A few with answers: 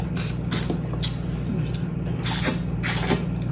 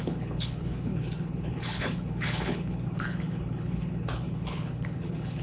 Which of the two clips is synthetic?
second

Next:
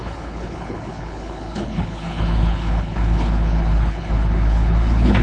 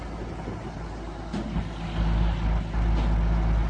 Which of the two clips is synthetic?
first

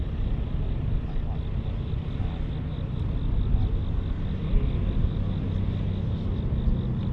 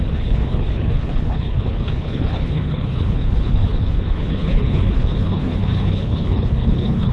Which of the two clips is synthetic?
second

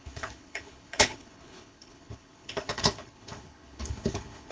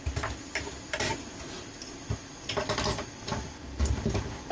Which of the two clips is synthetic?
first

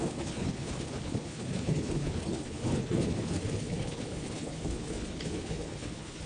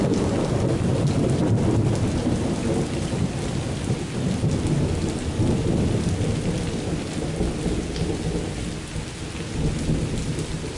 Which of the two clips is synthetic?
first